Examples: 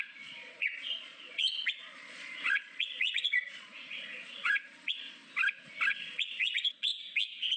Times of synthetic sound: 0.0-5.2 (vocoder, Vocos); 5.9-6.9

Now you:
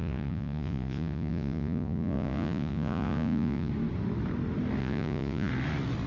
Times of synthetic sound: 0.0-3.7 (vocoder, Vocos); 4.8-5.5

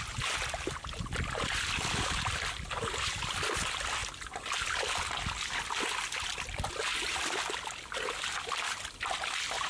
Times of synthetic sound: none

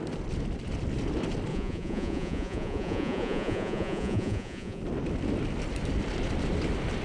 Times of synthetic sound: 1.5-4.8 (vocoder, Vocos)

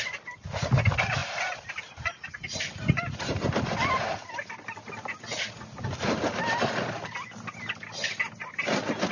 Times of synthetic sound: none

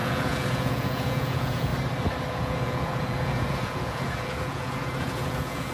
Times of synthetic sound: 0.0-1.7 (vocoder, Vocos); 2.3-5.7

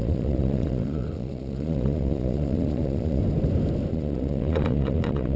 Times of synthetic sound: 0.0-3.2 (vocoder, Vocos); 3.9-5.4

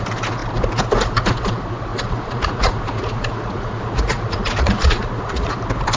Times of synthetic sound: 1.9-5.5 (vocoder, Vocos)